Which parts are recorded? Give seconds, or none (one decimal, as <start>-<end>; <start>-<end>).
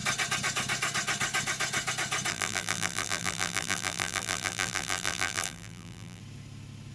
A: 0.0-2.3; 6.2-6.9